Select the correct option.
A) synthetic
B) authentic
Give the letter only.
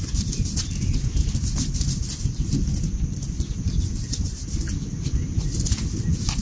B